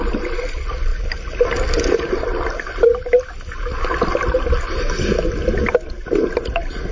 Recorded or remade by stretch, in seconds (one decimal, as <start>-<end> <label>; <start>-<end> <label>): 0.0-0.9 remade; 0.9-3.2 recorded; 3.2-4.2 remade; 4.2-5.9 recorded; 5.9-6.9 remade